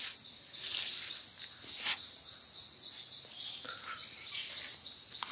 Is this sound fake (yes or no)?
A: no